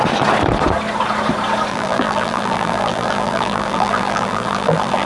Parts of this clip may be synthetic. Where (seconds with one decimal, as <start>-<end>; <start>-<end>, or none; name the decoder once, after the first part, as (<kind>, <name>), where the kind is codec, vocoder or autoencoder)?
1.7-5.1 (vocoder, BigVGAN v2)